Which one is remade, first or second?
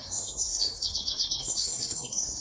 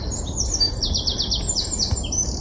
first